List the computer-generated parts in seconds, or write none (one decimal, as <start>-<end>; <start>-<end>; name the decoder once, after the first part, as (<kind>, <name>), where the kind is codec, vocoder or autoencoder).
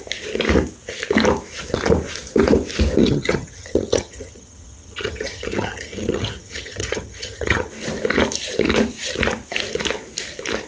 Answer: 3.0-7.7 (vocoder, HiFi-GAN)